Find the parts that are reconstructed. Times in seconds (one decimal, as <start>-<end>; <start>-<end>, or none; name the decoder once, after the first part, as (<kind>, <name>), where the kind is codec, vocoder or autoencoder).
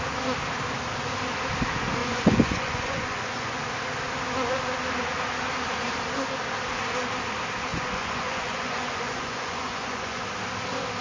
2.0-3.6 (vocoder, Vocos); 7.7-10.2